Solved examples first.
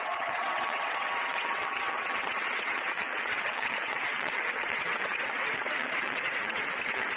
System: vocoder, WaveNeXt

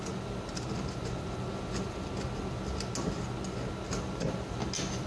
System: none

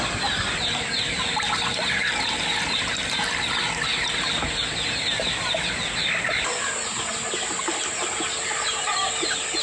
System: none